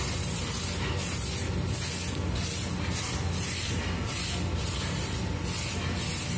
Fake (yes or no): no